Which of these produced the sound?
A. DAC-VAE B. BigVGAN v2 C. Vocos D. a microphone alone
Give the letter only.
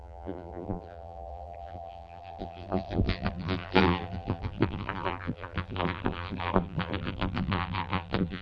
B